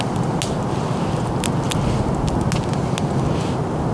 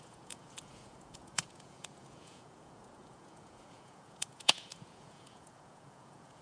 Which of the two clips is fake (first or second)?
second